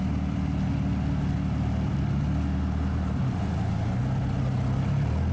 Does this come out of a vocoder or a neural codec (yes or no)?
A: no